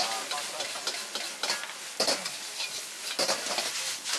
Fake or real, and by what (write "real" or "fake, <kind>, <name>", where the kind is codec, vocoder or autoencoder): real